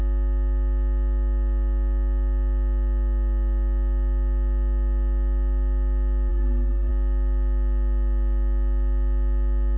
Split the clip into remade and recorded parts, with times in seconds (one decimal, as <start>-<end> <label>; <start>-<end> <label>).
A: 0.0-6.3 recorded; 6.3-6.9 remade; 6.9-9.8 recorded